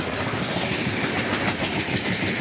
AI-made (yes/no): no